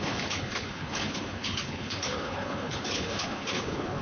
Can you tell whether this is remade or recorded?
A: remade